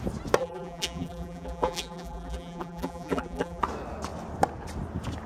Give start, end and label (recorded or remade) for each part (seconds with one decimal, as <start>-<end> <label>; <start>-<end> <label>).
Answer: 0.0-0.4 recorded; 0.4-3.6 remade; 3.6-5.3 recorded